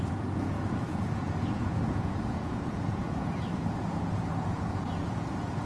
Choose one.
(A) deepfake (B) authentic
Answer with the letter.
A